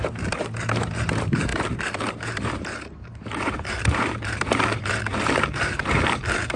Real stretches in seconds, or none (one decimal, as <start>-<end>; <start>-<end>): none